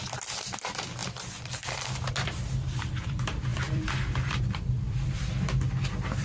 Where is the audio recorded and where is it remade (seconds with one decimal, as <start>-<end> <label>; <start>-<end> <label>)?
0.0-6.2 remade